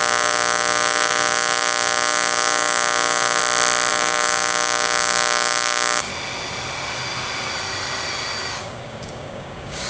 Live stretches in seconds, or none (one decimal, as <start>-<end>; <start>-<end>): 3.4-3.9; 6.1-8.6